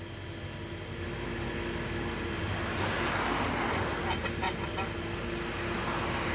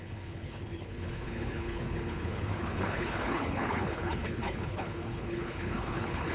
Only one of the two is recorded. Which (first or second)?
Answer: first